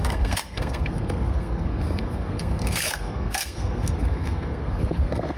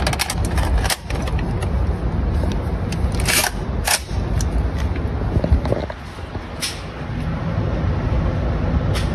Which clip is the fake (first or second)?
first